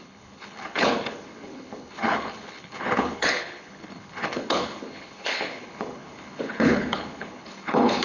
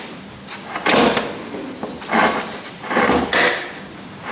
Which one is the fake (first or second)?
first